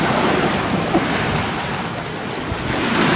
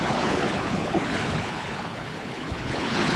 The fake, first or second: second